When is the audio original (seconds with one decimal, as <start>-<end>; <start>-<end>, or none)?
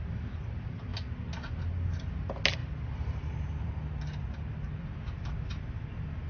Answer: 0.0-6.3